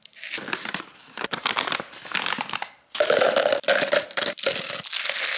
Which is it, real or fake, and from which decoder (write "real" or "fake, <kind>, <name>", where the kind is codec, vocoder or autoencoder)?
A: real